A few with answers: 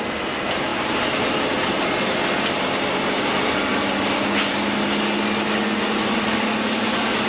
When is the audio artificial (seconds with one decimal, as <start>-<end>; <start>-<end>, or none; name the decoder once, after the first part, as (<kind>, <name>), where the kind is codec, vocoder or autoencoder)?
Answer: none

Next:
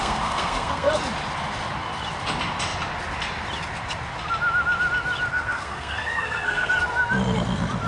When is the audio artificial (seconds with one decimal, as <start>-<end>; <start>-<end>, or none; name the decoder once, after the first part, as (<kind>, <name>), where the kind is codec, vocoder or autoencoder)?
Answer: 0.0-0.9 (codec, SNAC); 5.3-6.7

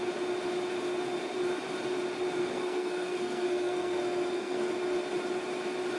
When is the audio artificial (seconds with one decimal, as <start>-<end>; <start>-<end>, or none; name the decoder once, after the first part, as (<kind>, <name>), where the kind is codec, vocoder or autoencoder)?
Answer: 2.4-4.7 (codec, SNAC)

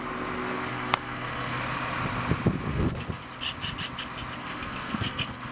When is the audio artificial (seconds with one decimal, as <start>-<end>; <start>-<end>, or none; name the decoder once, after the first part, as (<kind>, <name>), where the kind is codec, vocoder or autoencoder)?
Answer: 0.4-1.6 (codec, SNAC); 2.7-3.2; 4.4-5.5

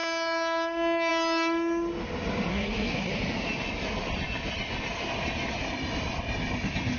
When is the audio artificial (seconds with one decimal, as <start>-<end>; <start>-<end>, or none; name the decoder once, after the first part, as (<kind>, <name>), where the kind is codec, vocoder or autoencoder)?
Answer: 2.5-3.1 (codec, SNAC)

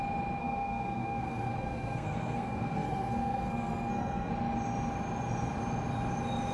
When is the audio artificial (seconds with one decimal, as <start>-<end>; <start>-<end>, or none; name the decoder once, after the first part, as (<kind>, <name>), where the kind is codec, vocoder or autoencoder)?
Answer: 0.4-4.3 (codec, SNAC)

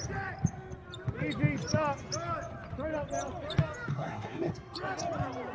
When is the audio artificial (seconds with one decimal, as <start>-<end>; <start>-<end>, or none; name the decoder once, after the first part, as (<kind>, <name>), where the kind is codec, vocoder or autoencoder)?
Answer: 3.9-4.5 (codec, SNAC)

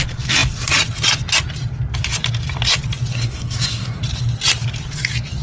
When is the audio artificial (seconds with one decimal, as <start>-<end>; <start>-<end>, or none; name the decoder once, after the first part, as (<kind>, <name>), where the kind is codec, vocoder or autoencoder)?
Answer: 3.1-4.0 (codec, SNAC)